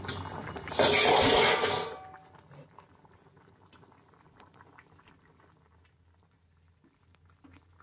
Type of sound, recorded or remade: recorded